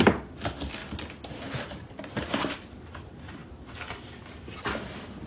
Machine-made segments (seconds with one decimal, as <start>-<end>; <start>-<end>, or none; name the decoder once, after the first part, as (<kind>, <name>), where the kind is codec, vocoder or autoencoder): none